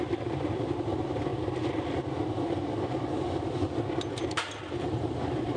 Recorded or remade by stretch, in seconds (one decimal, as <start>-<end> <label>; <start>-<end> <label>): 0.0-1.3 remade; 1.3-4.7 recorded; 4.7-5.6 remade